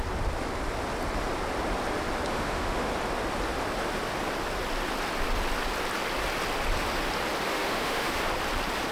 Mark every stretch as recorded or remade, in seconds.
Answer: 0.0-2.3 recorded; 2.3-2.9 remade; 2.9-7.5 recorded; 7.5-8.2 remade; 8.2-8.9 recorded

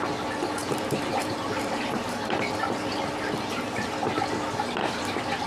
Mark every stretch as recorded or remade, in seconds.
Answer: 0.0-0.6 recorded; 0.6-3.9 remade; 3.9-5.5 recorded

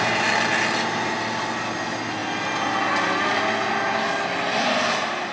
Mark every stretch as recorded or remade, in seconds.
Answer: 0.0-5.3 recorded